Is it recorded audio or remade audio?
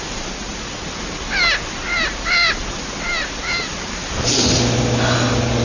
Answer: recorded